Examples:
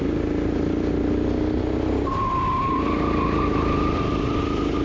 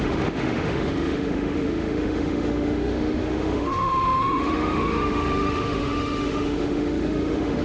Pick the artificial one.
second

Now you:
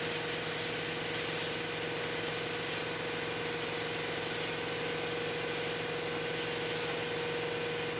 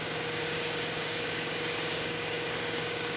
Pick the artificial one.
second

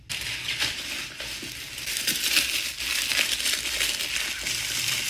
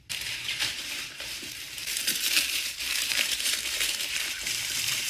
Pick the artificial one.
second